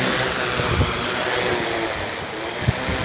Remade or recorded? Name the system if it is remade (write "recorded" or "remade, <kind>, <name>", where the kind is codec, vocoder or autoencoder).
recorded